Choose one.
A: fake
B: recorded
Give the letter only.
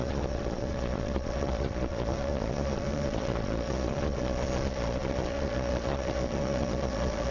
A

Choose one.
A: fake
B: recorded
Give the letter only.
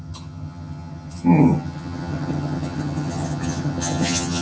A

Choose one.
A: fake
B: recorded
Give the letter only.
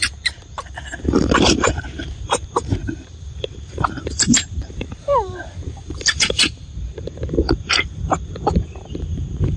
A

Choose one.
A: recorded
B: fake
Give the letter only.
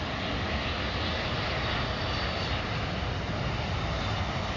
A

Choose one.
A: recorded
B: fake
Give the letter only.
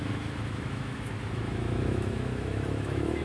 B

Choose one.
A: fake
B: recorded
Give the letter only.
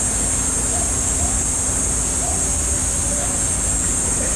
B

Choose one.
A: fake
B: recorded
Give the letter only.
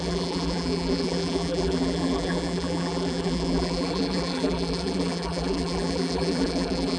A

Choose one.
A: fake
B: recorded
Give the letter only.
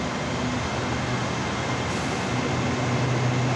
B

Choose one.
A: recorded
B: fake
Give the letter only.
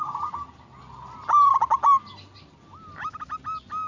A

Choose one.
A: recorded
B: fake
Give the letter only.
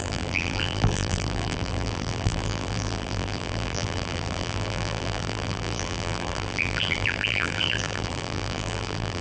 B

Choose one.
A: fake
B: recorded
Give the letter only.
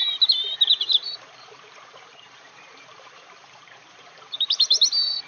A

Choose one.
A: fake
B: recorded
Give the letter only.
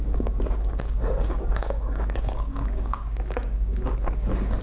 A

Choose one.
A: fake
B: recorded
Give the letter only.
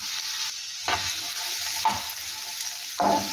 B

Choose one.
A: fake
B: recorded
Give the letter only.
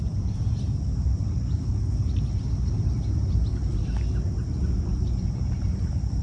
B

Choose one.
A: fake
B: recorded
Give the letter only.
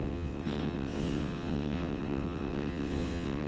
A